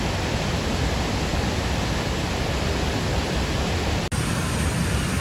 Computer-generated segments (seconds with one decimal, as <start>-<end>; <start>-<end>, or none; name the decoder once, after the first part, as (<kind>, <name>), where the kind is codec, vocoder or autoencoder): none